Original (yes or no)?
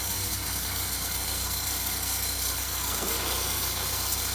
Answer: no